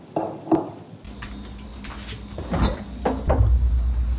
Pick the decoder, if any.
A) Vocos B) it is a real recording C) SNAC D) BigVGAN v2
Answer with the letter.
B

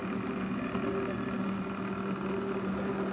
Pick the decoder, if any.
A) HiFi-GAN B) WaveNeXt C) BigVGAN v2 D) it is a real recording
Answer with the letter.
D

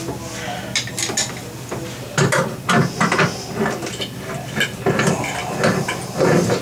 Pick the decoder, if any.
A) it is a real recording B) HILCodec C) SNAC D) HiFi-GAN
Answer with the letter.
A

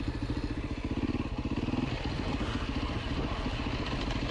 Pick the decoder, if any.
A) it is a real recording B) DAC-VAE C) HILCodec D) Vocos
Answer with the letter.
A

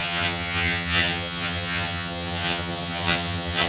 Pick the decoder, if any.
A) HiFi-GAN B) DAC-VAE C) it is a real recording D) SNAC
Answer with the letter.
A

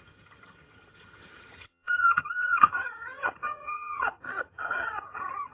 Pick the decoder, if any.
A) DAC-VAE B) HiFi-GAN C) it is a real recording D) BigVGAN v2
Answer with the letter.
B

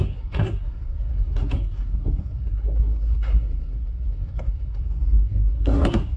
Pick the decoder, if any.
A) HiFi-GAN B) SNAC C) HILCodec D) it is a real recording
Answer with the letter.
B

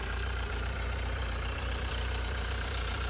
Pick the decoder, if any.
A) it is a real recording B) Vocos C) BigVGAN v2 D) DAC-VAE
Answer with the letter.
C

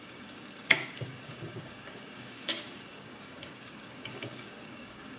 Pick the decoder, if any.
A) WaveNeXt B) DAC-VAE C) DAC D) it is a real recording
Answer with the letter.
C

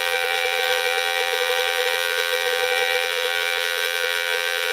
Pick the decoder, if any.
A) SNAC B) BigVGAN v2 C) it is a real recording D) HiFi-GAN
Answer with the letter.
B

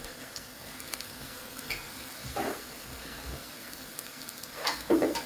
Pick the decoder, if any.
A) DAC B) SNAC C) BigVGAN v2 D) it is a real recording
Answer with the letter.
B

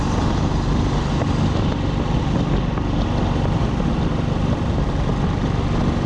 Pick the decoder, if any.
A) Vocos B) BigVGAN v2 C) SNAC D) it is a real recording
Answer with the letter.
D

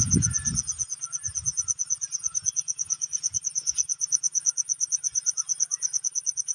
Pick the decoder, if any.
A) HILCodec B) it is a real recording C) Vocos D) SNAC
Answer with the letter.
C